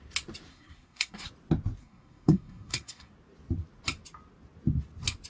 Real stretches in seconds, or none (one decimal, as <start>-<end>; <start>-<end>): 0.0-0.5; 1.3-1.8; 3.1-5.3